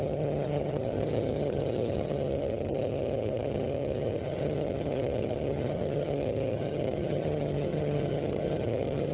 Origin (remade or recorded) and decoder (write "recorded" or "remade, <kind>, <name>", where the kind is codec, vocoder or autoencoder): remade, vocoder, HiFi-GAN